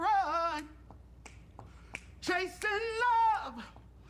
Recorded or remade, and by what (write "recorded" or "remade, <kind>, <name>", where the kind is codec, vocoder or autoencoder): remade, vocoder, BigVGAN v2